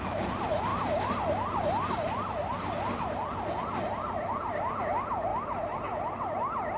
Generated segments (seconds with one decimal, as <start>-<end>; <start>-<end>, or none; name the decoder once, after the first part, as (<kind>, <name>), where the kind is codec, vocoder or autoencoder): none